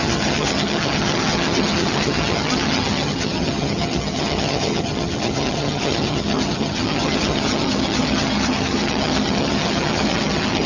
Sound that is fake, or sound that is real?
fake